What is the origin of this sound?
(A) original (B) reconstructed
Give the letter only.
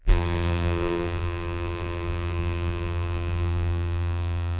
B